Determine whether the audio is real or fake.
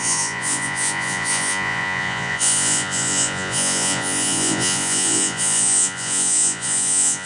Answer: fake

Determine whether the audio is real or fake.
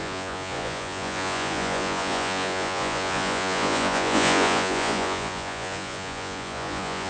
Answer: fake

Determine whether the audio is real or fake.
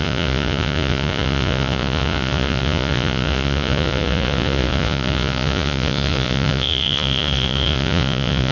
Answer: fake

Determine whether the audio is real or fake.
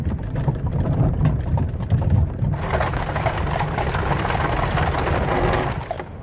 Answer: real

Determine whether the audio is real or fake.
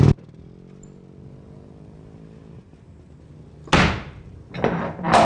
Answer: real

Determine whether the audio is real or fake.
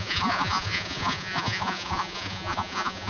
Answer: fake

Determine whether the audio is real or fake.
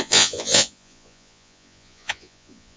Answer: fake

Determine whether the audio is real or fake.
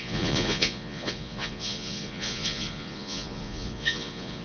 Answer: fake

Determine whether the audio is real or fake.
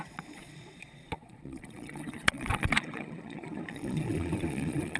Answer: fake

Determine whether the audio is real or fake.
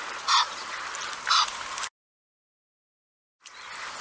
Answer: real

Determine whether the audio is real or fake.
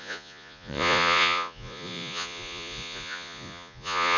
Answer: fake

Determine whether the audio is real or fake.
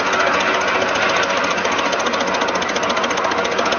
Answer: real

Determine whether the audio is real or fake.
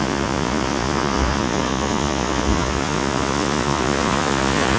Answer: fake